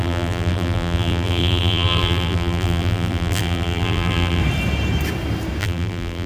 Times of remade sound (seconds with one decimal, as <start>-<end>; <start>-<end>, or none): 0.0-4.4; 5.6-6.3